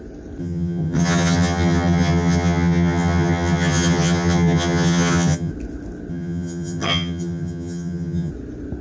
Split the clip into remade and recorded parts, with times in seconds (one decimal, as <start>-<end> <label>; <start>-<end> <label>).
0.0-0.4 recorded; 0.4-5.5 remade; 5.5-6.1 recorded; 6.1-8.3 remade; 8.3-8.8 recorded